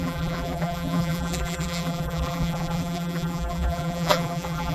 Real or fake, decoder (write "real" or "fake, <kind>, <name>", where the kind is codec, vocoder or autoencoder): fake, vocoder, BigVGAN v2